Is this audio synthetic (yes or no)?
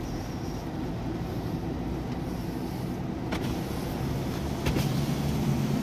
no